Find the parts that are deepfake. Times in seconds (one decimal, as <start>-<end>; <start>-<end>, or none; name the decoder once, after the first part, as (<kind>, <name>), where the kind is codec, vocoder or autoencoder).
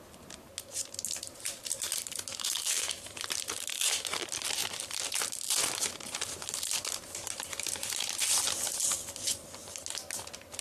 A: 2.3-3.0 (autoencoder, DAC-VAE)